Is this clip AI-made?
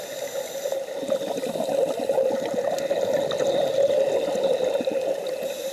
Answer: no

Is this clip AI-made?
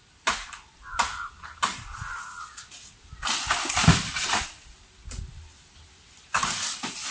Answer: no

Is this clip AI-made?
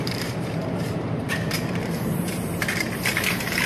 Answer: yes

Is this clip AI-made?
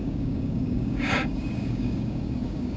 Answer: yes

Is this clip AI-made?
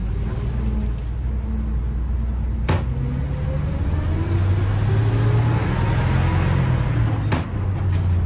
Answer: no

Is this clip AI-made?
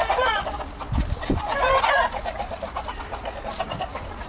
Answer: yes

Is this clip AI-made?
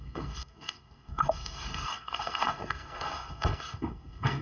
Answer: yes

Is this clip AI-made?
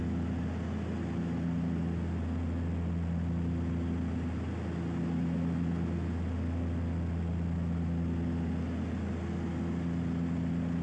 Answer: no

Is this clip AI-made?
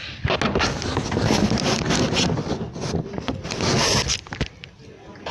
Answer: no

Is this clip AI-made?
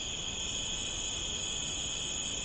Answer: no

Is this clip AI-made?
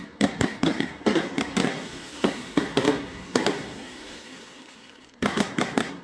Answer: yes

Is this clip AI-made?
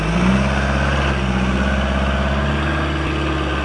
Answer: no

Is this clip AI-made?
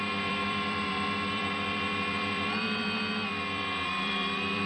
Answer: yes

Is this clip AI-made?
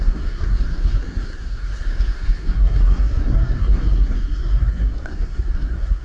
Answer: yes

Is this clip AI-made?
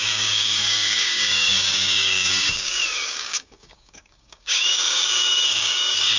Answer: yes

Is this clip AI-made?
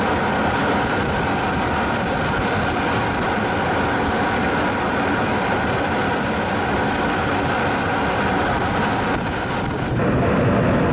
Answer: no